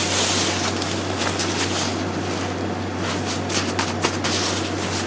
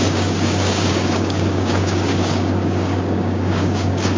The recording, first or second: first